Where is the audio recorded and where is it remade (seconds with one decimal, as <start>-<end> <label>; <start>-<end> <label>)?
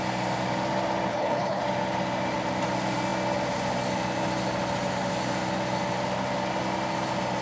0.0-1.1 recorded; 1.1-1.6 remade; 1.6-7.4 recorded